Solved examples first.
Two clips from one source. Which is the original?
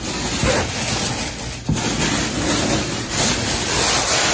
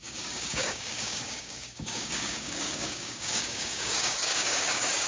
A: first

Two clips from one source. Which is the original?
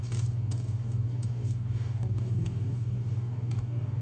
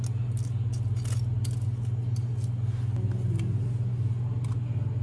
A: second